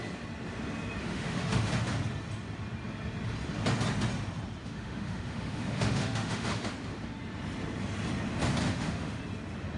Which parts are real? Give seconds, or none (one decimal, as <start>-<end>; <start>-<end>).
0.0-1.0; 1.7-4.6; 6.7-8.6; 9.2-9.8